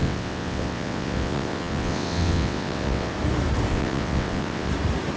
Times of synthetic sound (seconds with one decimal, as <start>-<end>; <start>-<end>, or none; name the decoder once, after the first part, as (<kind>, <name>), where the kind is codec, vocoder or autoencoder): 0.0-3.1 (vocoder, WaveNeXt); 3.7-4.7